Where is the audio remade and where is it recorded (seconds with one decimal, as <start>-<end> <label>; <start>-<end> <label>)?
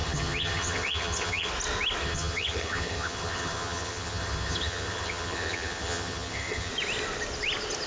0.0-1.5 remade; 1.5-2.0 recorded; 2.0-6.7 remade; 6.7-7.9 recorded